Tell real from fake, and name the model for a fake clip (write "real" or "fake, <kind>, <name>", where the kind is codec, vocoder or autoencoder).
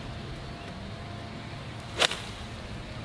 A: real